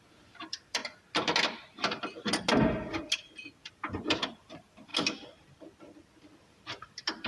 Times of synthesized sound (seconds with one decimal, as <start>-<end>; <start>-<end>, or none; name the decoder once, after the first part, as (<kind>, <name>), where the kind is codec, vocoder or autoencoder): 0.0-0.8 (vocoder, BigVGAN v2); 3.7-4.9; 6.4-7.3